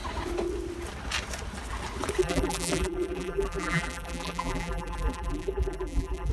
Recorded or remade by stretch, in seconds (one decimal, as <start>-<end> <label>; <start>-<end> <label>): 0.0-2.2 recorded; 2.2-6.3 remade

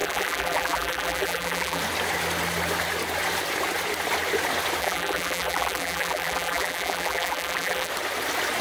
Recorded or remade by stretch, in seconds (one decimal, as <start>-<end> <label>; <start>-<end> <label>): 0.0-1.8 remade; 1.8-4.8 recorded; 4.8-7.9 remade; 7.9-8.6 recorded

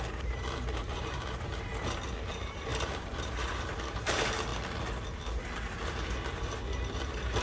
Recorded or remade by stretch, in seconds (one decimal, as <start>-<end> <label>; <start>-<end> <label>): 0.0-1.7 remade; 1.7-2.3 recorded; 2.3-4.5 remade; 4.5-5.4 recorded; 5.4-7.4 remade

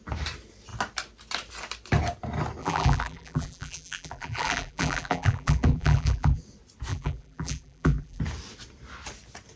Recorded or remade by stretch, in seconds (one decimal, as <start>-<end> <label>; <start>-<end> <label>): 0.0-2.6 recorded; 2.6-6.4 remade; 6.4-6.9 recorded; 6.9-8.2 remade; 8.2-9.6 recorded

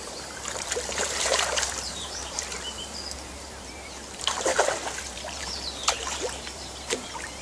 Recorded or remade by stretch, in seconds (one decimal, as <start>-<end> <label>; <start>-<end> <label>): 0.0-4.5 remade; 4.5-5.0 recorded; 5.0-7.4 remade